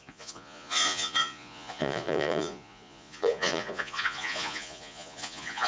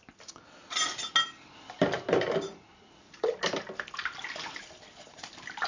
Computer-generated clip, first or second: first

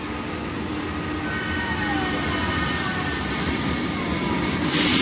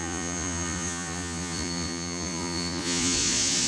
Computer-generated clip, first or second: second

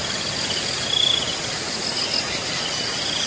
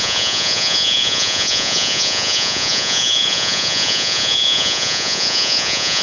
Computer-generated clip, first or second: second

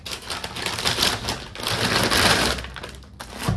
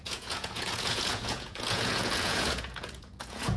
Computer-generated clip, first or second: second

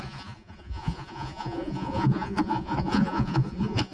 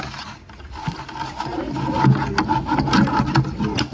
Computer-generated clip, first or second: first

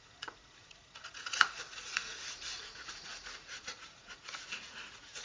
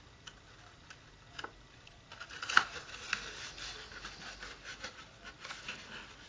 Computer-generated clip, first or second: first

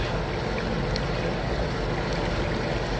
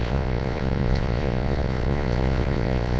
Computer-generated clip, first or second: second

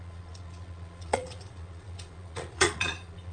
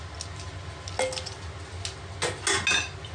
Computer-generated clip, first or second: first